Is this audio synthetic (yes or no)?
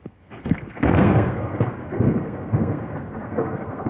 yes